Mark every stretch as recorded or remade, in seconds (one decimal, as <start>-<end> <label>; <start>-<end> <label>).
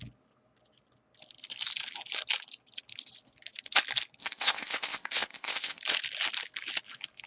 0.0-4.2 recorded; 4.2-5.8 remade; 5.8-7.3 recorded